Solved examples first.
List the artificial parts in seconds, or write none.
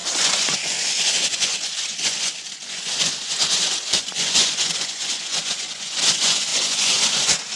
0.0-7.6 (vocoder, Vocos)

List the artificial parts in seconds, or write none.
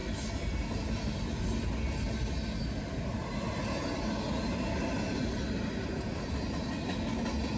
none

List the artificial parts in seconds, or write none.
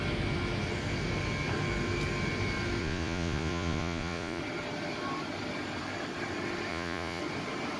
2.8-4.4 (vocoder, Vocos); 6.7-7.2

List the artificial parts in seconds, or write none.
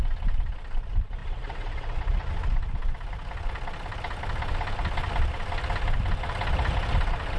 1.2-2.3 (vocoder, WaveNeXt)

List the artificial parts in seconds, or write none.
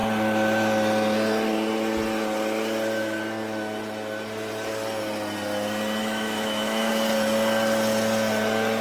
6.0-6.9 (autoencoder, DAC-VAE)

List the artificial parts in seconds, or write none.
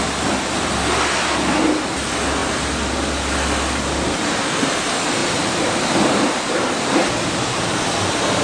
5.2-6.4 (vocoder, BigVGAN v2)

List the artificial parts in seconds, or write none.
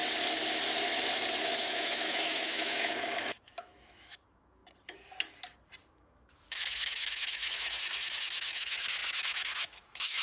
1.4-4.6 (autoencoder, DAC-VAE); 5.9-10.2